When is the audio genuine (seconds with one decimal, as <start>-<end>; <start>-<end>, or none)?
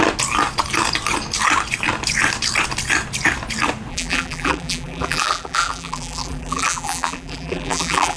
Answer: 0.0-3.9